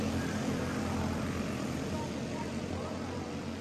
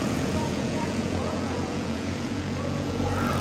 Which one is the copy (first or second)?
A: second